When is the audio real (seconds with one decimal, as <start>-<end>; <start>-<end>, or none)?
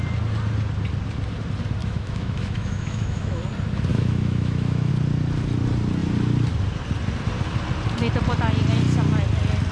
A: 0.0-1.8; 3.4-3.9; 4.9-9.7